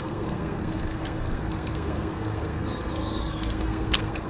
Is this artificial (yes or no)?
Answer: yes